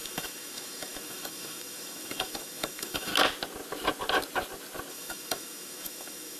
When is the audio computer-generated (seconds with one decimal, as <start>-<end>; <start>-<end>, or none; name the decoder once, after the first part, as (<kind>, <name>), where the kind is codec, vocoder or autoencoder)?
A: 0.0-3.1 (autoencoder, DAC-VAE); 4.9-6.4